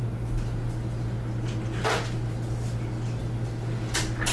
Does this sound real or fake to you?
real